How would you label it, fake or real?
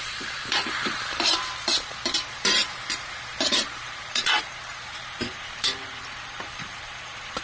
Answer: fake